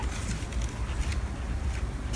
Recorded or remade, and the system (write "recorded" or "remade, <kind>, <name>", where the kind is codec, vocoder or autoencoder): recorded